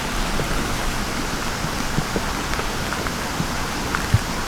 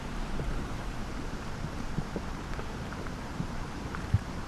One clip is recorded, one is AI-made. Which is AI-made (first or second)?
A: second